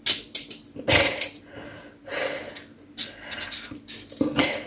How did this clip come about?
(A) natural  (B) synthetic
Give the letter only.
A